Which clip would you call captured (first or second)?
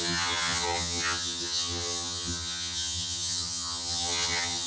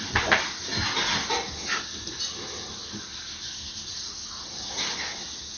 second